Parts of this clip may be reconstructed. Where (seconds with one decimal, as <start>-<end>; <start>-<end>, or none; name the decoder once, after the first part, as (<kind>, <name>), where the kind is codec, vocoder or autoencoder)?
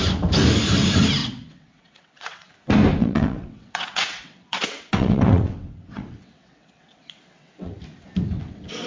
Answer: 1.2-2.5 (vocoder, WaveNeXt); 3.0-7.7; 8.4-8.9